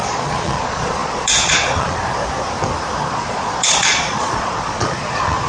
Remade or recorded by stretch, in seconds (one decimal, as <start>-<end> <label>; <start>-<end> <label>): 0.0-2.0 remade; 2.0-3.1 recorded; 3.1-5.5 remade